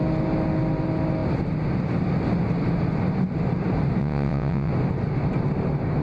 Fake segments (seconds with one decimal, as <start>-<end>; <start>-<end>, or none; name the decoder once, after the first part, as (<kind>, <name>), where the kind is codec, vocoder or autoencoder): 4.0-4.7 (vocoder, WaveNeXt)